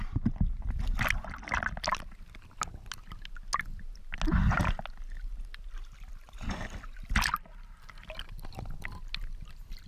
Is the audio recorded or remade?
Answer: recorded